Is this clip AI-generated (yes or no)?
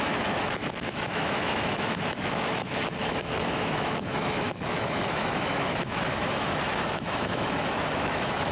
yes